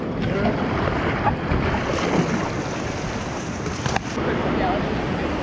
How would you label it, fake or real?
real